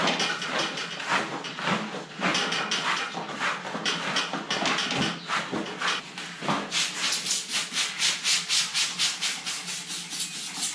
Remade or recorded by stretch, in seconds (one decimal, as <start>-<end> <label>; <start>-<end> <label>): 0.0-10.7 recorded

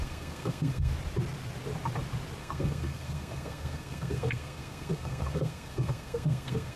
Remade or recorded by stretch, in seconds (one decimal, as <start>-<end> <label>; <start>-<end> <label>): 0.0-0.9 remade; 0.9-2.4 recorded; 2.4-6.8 remade